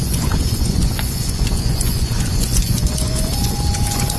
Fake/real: fake